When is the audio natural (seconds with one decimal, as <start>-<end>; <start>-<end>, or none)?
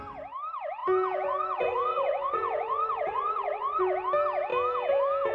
0.0-0.8; 3.8-5.3